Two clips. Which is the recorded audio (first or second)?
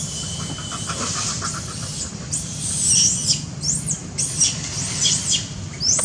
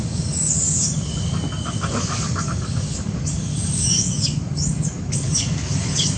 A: first